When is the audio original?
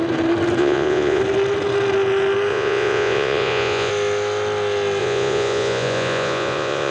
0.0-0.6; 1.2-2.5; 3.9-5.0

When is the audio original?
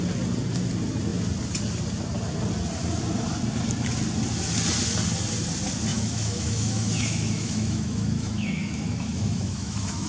0.0-5.9